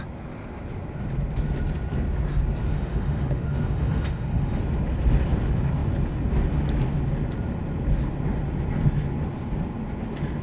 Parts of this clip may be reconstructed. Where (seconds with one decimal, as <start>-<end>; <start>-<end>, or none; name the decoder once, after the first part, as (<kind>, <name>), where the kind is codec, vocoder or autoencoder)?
2.7-4.6 (autoencoder, DAC-VAE)